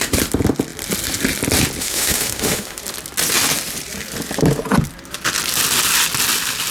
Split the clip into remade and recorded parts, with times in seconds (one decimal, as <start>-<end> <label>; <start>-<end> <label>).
0.0-1.8 recorded; 1.8-2.8 remade; 2.8-6.7 recorded